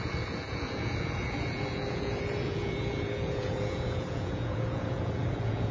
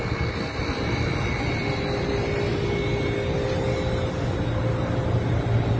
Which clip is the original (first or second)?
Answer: second